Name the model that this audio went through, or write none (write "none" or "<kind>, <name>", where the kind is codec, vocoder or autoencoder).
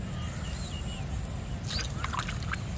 none